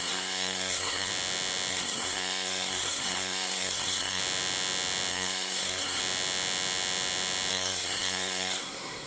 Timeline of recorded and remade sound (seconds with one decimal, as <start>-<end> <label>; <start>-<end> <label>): 0.0-1.1 remade; 1.1-1.7 recorded; 1.7-4.2 remade; 4.2-5.1 recorded; 5.1-6.0 remade; 6.0-7.5 recorded; 7.5-9.1 remade

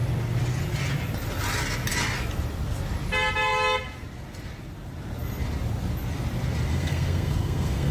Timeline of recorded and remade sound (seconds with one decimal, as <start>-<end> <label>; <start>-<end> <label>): 0.0-6.7 recorded; 6.7-7.9 remade

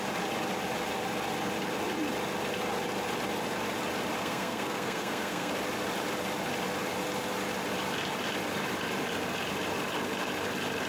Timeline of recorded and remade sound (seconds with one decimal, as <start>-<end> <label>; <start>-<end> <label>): 0.0-4.2 recorded; 4.2-5.5 remade; 5.5-10.9 recorded

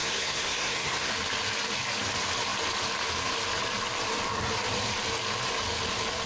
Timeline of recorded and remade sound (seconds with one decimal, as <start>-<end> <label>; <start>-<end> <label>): 0.0-1.1 remade; 1.1-6.3 recorded

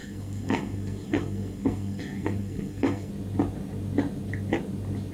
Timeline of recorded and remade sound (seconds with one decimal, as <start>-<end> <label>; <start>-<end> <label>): 0.0-3.1 remade; 3.1-5.1 recorded

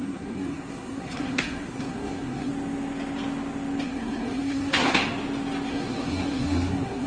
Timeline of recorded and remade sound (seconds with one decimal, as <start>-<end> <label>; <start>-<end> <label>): 0.0-2.5 remade; 2.5-3.8 recorded; 3.8-5.0 remade; 5.0-5.7 recorded; 5.7-7.1 remade

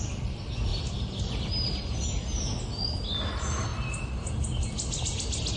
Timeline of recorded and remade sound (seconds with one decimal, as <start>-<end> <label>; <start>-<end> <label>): 0.0-5.6 recorded

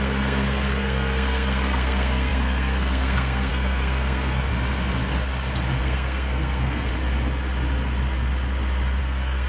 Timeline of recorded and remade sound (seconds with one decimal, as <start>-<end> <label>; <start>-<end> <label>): 0.0-4.5 remade; 4.5-5.8 recorded; 5.8-6.9 remade; 6.9-9.0 recorded; 9.0-9.5 remade